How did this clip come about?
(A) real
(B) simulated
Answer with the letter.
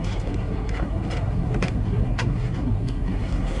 B